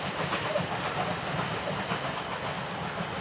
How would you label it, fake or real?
real